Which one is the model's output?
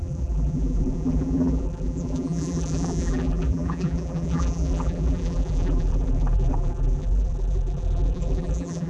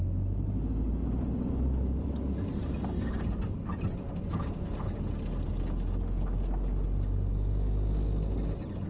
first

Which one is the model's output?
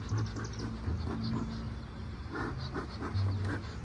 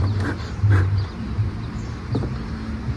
second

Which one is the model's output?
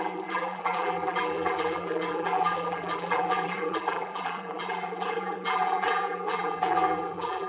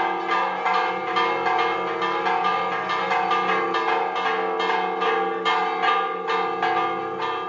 first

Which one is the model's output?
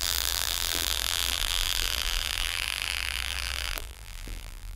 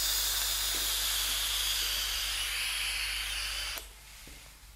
first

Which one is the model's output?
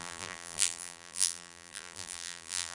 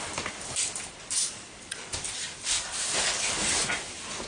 first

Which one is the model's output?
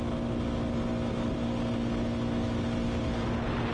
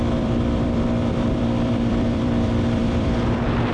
second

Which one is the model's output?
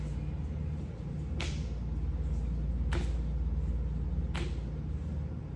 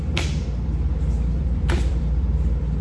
second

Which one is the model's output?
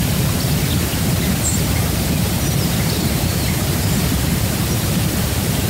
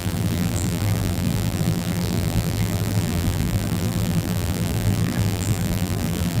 second